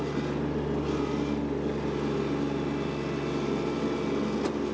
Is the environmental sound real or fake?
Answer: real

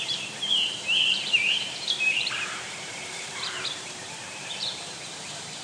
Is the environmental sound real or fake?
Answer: fake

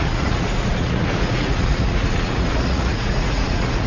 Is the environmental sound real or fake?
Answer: fake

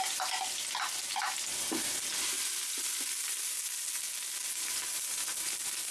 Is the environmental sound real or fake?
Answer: real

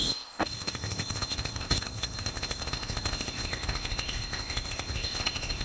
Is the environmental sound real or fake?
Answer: fake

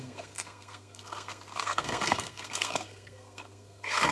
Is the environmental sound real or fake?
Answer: fake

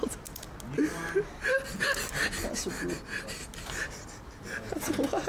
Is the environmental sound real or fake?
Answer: real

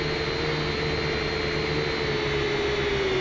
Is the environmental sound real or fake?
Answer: real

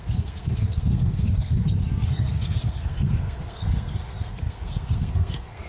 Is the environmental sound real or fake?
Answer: fake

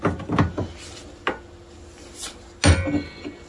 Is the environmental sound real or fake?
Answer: real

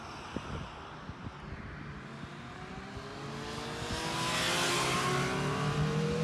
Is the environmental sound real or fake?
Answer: real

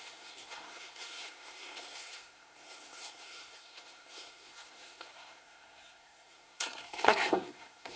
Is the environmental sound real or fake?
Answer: fake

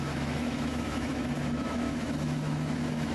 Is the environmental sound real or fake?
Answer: fake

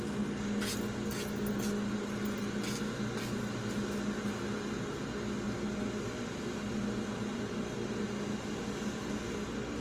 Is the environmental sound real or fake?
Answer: real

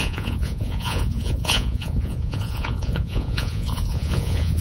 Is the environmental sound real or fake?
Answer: fake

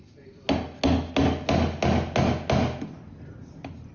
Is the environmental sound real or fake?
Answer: real